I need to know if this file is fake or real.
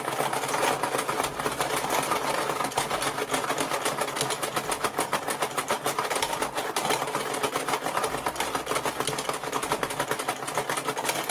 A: real